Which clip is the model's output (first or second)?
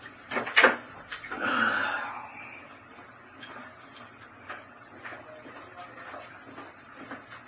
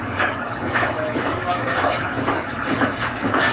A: second